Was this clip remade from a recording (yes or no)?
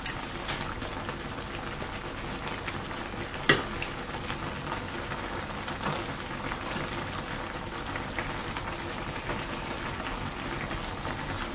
no